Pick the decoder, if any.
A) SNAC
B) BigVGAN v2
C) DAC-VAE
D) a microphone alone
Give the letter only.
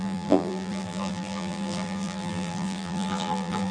B